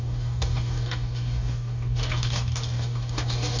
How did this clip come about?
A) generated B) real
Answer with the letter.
A